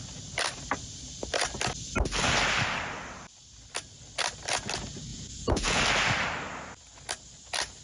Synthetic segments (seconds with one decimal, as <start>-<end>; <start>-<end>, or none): 5.1-5.8